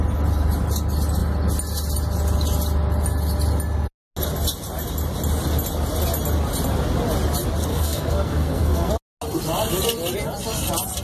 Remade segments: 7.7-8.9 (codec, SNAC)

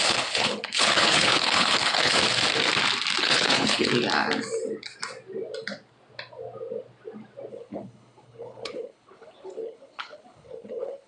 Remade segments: 0.0-2.2 (codec, HILCodec); 3.2-3.9; 7.5-11.1

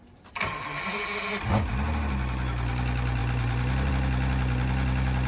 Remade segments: none

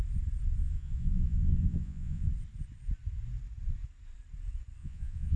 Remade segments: 0.6-2.3 (vocoder, Vocos); 4.8-5.4

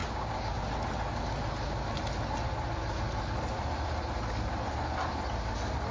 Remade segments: 0.0-0.6 (codec, DAC)

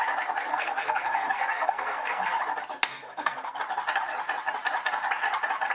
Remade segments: 0.5-2.4 (codec, SNAC); 2.9-3.6

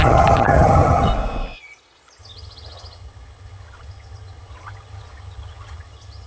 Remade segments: 0.0-1.1 (vocoder, HiFi-GAN); 2.2-6.3